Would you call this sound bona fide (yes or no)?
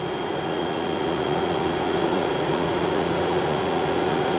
no